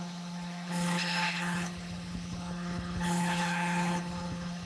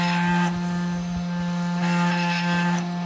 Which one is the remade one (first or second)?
first